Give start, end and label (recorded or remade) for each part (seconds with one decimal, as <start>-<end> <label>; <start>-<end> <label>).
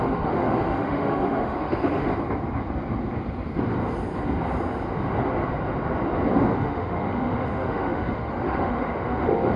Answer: 0.0-2.1 remade; 2.1-6.6 recorded; 6.6-9.6 remade